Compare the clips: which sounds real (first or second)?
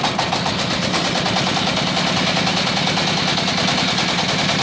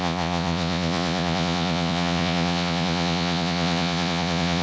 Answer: first